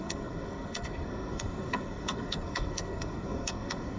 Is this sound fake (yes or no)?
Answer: yes